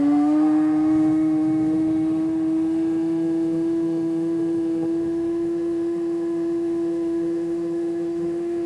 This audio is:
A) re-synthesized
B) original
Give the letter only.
A